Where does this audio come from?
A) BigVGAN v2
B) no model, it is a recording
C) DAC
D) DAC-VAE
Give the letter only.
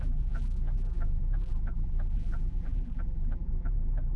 A